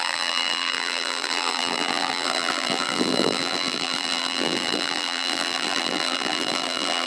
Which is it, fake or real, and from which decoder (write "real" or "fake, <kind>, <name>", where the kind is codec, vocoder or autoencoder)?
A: fake, vocoder, BigVGAN v2